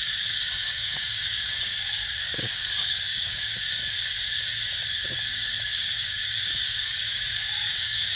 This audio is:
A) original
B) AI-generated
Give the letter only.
B